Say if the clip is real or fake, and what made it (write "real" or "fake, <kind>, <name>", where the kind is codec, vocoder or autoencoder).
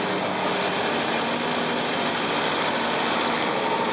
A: real